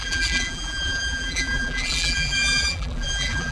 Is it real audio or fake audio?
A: fake